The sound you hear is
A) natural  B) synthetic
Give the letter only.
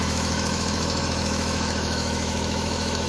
B